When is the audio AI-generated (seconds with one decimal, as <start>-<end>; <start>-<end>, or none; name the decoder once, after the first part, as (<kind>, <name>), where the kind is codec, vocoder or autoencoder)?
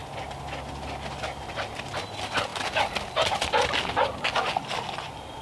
none